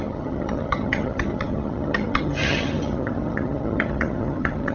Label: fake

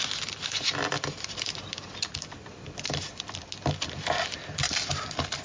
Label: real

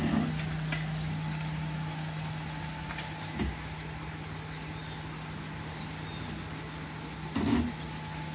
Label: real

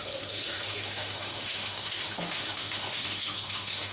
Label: fake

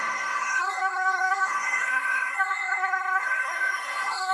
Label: fake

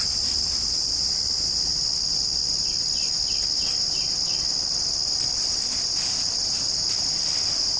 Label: real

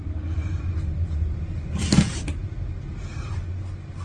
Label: real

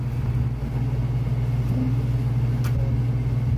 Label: real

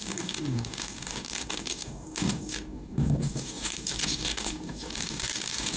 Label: fake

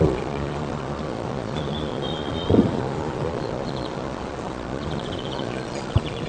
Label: fake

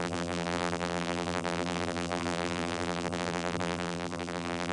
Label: fake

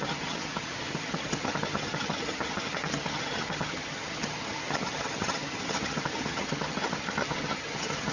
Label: fake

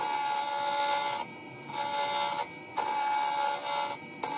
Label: real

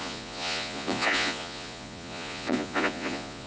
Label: fake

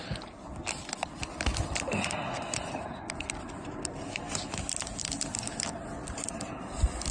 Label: real